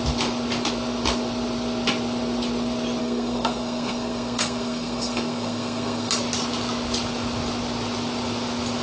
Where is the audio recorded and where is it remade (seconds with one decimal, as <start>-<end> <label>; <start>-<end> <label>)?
0.0-3.0 recorded; 3.0-6.1 remade; 6.1-8.8 recorded